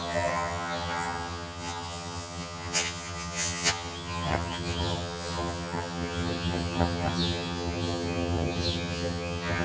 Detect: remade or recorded remade